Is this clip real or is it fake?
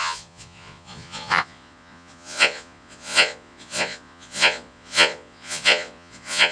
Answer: fake